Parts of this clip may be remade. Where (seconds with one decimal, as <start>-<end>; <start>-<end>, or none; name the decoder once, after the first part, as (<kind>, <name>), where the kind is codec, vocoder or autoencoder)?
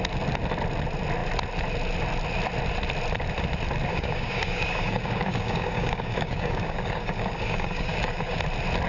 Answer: 3.9-8.4 (codec, DAC)